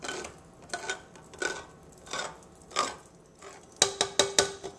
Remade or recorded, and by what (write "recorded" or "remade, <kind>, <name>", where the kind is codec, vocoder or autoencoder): recorded